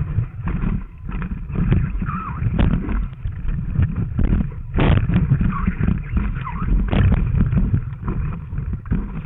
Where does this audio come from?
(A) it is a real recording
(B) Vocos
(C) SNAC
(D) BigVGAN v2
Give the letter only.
D